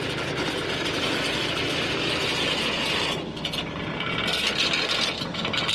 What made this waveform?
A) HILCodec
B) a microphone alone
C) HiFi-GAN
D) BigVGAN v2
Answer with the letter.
B